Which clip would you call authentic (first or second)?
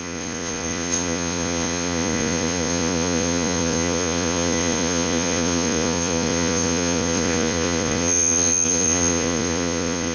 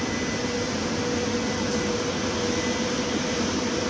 second